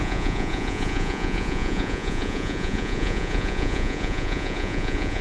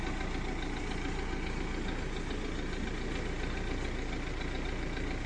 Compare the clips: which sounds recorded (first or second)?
second